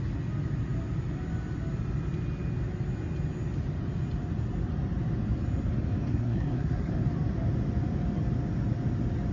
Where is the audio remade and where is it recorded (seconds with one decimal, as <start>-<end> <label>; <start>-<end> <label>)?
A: 0.0-6.1 recorded; 6.1-6.9 remade; 6.9-9.3 recorded